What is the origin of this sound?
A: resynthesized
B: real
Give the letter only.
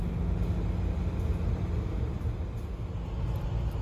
B